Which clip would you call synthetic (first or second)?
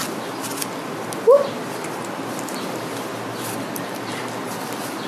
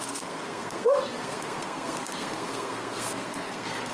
second